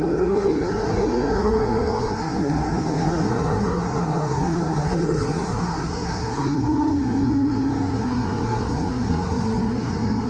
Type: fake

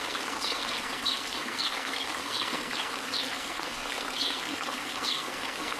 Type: fake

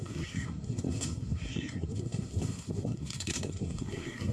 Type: fake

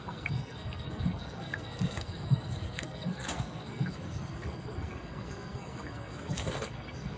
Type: fake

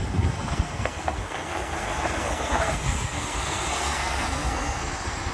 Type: fake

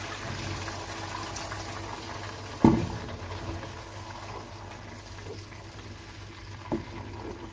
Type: real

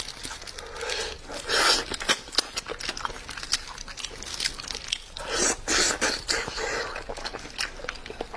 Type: real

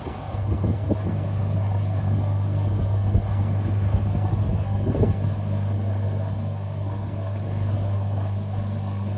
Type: fake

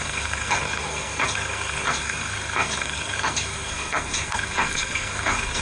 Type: fake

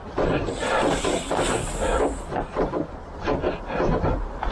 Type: real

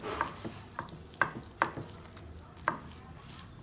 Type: real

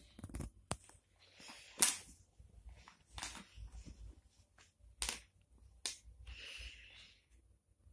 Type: real